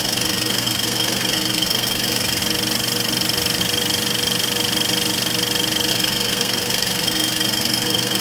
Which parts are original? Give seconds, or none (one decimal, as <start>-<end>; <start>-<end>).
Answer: 2.4-5.9